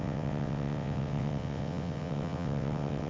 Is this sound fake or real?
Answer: fake